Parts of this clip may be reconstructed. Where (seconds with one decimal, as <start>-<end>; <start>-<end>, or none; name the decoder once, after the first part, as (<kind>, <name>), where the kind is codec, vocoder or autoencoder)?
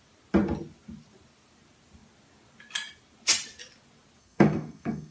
4.2-5.1 (codec, SNAC)